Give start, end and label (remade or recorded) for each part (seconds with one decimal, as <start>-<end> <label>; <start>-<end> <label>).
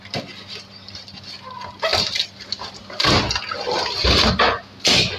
0.0-5.2 recorded